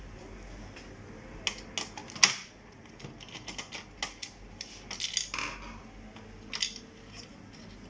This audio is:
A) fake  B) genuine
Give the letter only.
B